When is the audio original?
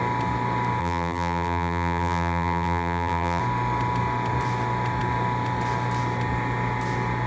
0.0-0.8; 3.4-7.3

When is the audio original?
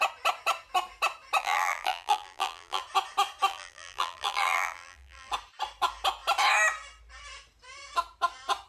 0.0-1.4; 2.8-3.5; 5.3-8.7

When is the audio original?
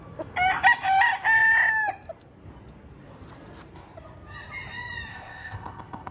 0.0-5.1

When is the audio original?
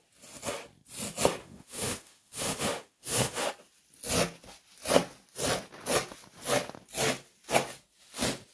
0.0-1.4; 3.5-8.5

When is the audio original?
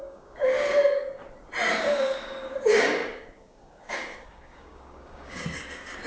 1.2-1.7